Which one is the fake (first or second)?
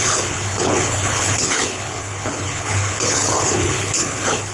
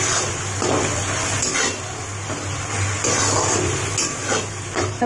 first